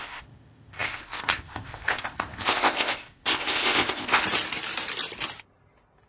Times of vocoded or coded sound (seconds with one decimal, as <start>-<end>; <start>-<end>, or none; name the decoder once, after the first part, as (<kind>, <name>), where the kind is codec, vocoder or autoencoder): 0.0-4.2 (codec, ZipCodec)